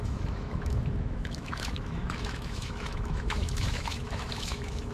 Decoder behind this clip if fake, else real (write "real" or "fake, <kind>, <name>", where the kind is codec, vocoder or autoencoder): fake, autoencoder, DAC-VAE